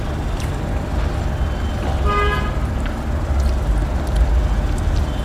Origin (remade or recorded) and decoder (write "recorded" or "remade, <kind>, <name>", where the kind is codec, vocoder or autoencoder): recorded